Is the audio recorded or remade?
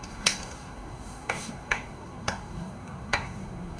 remade